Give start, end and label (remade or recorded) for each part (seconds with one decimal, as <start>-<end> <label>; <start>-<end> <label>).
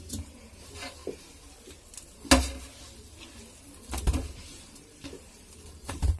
0.0-1.0 remade; 1.0-4.2 recorded; 4.2-6.2 remade